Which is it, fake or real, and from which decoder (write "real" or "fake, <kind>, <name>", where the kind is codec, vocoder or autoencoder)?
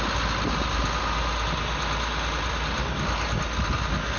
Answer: real